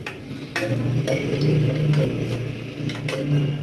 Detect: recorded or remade recorded